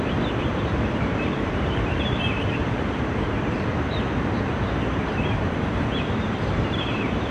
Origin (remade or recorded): remade